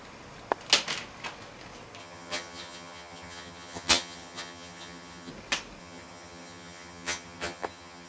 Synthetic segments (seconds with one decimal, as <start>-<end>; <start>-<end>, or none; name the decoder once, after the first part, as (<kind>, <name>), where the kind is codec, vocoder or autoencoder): 2.0-5.3 (vocoder, HiFi-GAN); 5.8-8.1